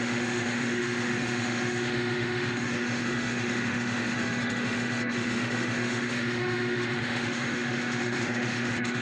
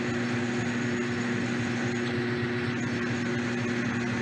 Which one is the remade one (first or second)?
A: first